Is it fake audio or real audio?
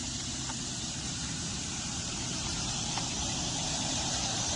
fake